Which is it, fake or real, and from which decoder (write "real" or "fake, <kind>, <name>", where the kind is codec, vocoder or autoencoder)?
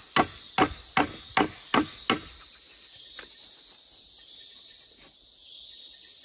real